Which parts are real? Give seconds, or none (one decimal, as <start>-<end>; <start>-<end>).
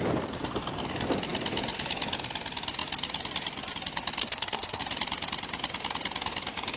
0.0-4.2; 4.8-6.8